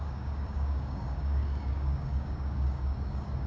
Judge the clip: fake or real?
fake